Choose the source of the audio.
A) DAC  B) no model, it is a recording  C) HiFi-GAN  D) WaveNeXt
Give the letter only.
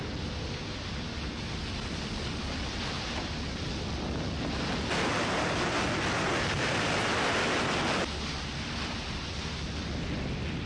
B